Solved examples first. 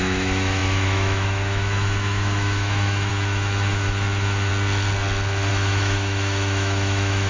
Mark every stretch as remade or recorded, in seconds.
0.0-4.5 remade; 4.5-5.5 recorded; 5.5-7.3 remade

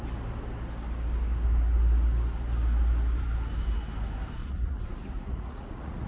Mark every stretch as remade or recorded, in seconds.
0.0-4.4 recorded; 4.4-6.1 remade

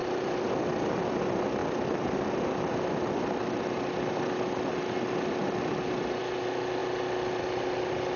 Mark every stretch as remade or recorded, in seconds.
0.0-8.2 recorded

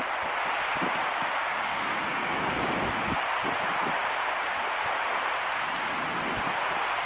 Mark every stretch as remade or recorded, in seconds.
0.0-1.2 recorded; 1.2-2.7 remade; 2.7-7.1 recorded

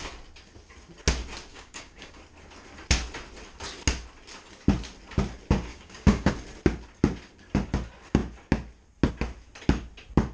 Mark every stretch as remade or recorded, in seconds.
0.0-1.5 recorded; 1.5-2.2 remade; 2.2-5.7 recorded; 5.7-6.3 remade; 6.3-10.3 recorded

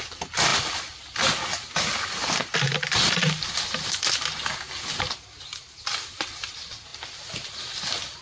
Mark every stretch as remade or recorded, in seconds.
0.0-8.2 recorded